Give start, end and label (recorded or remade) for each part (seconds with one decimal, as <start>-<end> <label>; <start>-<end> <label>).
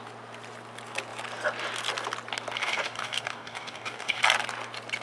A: 0.0-2.6 recorded; 2.6-4.2 remade; 4.2-5.0 recorded